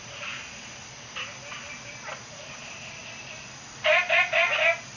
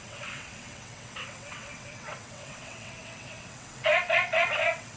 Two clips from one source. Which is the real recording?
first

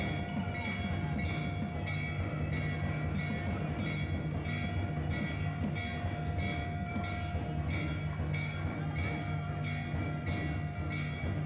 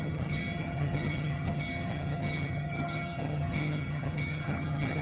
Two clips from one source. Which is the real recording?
first